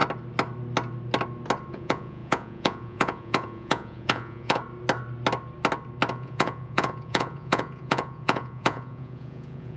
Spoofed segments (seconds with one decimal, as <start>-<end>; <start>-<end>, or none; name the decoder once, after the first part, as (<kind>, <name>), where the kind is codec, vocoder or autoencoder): 1.7-4.6 (vocoder, Vocos); 6.1-9.8